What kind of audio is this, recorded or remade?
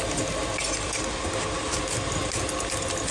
recorded